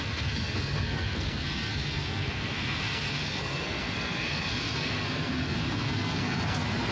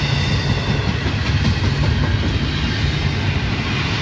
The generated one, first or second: first